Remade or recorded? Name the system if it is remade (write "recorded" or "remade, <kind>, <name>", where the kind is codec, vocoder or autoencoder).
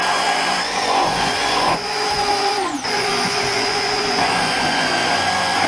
remade, vocoder, Vocos